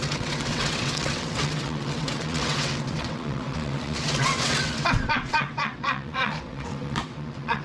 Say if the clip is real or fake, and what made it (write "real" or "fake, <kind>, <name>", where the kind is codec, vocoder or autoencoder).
fake, vocoder, WaveNeXt